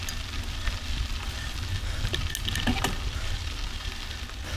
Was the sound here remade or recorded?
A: recorded